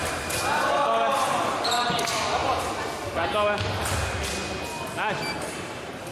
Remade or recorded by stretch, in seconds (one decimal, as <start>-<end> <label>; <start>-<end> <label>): 0.0-6.1 recorded